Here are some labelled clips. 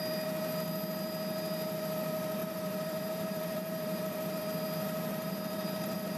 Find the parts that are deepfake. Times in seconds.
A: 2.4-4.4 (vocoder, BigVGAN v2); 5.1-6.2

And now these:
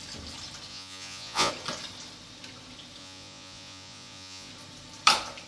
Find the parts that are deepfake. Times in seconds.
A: 0.7-1.5 (vocoder, Vocos); 3.0-4.5

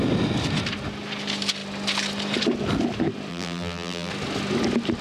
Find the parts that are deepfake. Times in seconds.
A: 3.3-4.1 (vocoder, BigVGAN v2)